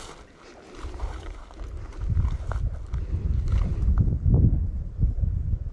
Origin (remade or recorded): recorded